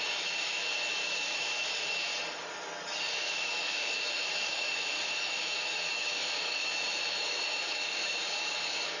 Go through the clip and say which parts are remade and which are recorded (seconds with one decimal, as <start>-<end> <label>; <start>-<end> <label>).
0.0-2.1 remade; 2.1-3.1 recorded; 3.1-9.0 remade